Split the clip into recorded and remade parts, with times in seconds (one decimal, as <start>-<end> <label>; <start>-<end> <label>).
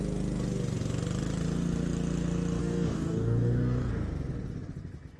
0.0-2.6 recorded; 2.6-3.9 remade; 3.9-5.2 recorded